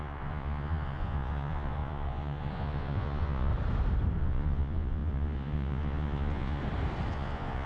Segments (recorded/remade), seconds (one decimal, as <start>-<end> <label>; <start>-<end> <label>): 0.0-3.5 remade; 3.5-4.2 recorded; 4.2-6.6 remade; 6.6-7.1 recorded; 7.1-7.7 remade